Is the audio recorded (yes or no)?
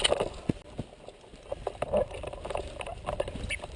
yes